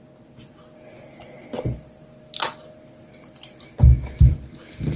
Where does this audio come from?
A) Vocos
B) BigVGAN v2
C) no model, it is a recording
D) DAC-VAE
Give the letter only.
C